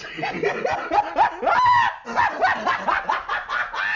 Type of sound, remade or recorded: recorded